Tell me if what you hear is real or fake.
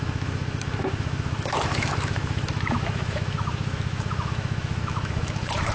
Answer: fake